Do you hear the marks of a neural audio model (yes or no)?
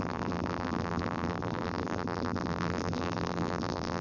yes